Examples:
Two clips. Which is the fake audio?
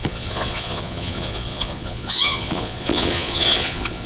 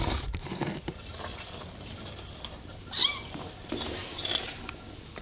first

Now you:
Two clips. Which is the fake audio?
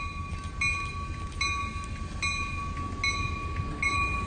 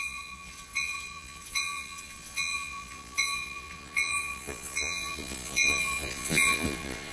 second